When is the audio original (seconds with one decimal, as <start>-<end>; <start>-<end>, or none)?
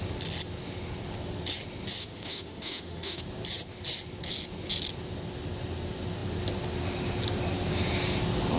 0.0-2.0; 3.2-8.6